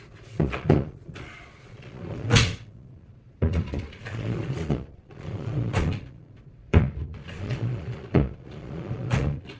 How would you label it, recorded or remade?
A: remade